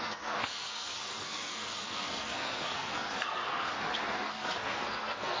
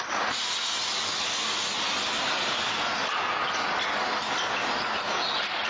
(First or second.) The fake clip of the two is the first